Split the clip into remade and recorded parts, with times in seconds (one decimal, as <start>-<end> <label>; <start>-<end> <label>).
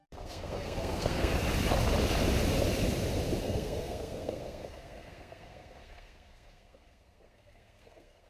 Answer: 0.0-1.3 remade; 1.3-3.4 recorded; 3.4-8.3 remade